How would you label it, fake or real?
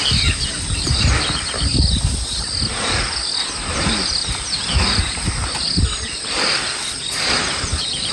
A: real